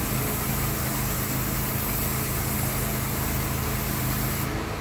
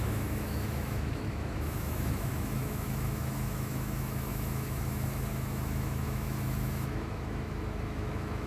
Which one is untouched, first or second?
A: first